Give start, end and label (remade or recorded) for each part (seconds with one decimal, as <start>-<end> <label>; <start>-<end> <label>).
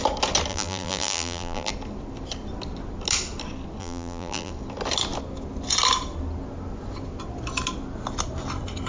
0.0-0.5 recorded; 0.5-1.7 remade; 1.7-3.8 recorded; 3.8-4.5 remade; 4.5-8.9 recorded